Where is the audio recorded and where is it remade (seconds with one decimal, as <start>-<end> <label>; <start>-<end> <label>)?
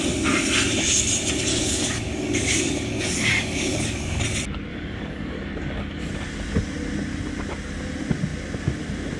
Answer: 0.0-1.5 recorded; 1.5-4.2 remade; 4.2-4.7 recorded; 4.7-6.1 remade; 6.1-9.2 recorded